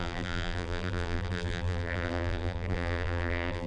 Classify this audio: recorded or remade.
remade